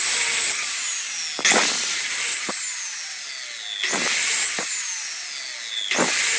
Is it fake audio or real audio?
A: real